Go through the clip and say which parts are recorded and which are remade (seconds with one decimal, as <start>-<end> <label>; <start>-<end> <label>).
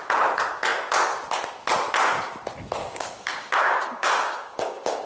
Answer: 0.0-2.8 recorded; 2.8-5.1 remade